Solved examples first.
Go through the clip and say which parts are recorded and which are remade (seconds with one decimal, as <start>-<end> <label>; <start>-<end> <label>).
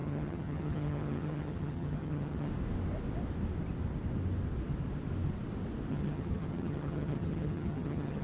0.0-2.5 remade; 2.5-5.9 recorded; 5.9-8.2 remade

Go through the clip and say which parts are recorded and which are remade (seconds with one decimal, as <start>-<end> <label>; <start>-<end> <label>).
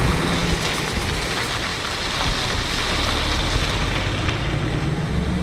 0.0-5.4 recorded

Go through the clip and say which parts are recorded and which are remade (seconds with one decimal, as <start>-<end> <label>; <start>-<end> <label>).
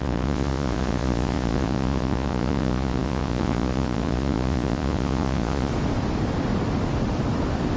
0.0-5.7 remade; 5.7-7.8 recorded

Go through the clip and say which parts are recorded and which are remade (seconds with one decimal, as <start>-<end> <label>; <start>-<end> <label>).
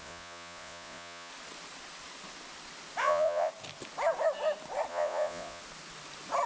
0.0-1.3 remade; 1.3-3.0 recorded; 3.0-3.5 remade; 3.5-4.9 recorded; 4.9-5.6 remade; 5.6-6.5 recorded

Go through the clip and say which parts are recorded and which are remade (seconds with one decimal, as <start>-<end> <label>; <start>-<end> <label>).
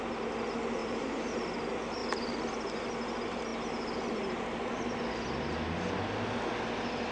0.0-0.8 recorded; 0.8-1.3 remade; 1.3-7.1 recorded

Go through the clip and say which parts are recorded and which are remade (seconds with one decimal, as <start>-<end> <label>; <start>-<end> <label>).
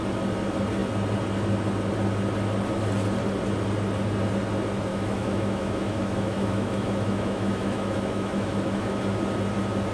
0.0-4.9 recorded; 4.9-9.0 remade; 9.0-9.9 recorded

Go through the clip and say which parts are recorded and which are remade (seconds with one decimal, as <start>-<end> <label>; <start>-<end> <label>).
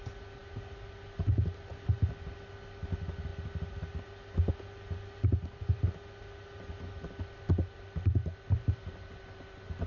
0.0-9.9 recorded